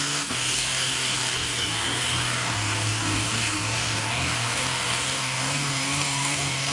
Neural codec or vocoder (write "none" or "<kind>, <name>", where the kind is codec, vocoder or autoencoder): codec, DAC